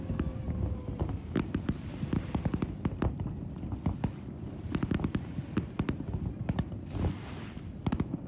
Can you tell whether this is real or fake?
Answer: real